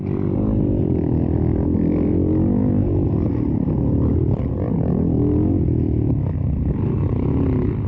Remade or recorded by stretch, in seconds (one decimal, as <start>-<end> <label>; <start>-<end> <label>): 0.0-2.8 recorded; 2.8-3.8 remade; 3.8-7.9 recorded